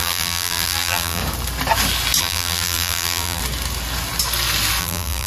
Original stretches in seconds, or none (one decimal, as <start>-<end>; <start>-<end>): 1.2-2.2; 3.4-4.8